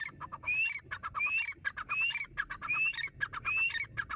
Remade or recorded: remade